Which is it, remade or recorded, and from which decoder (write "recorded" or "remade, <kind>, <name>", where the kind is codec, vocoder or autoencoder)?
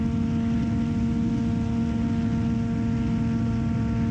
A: recorded